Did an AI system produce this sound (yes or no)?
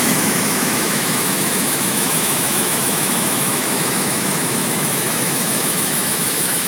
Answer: yes